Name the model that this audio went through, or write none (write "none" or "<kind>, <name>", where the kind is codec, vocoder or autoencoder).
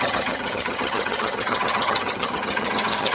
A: vocoder, HiFi-GAN